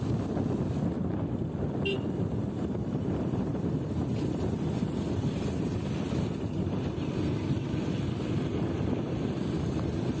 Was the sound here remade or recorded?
recorded